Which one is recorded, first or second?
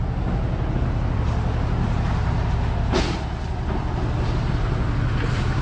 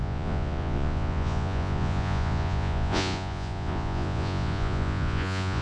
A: first